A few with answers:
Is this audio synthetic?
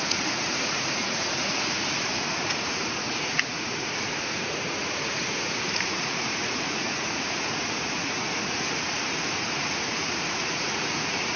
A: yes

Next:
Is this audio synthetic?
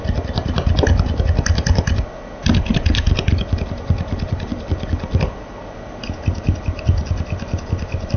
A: no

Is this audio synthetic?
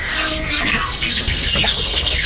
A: yes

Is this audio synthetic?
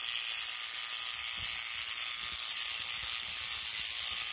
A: no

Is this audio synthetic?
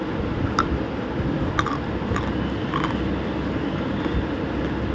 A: no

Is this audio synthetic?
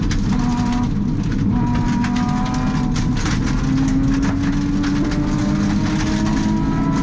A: no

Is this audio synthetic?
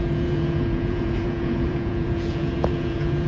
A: yes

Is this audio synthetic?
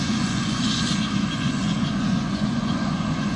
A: yes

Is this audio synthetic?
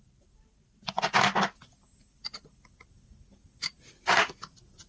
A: no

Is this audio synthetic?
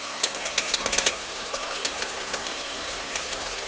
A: yes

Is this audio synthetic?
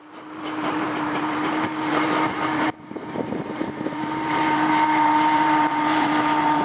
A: yes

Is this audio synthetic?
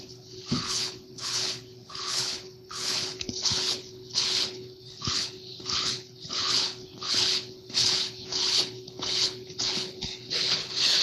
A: yes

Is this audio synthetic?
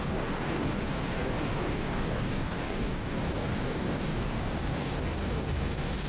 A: yes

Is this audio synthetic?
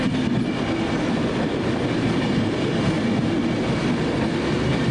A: no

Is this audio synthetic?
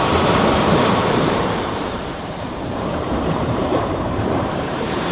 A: yes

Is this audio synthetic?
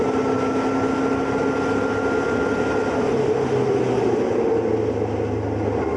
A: no